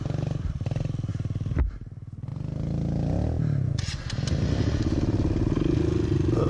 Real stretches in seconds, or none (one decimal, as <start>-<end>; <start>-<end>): 0.0-6.5